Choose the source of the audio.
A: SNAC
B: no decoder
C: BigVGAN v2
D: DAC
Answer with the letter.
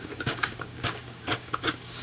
D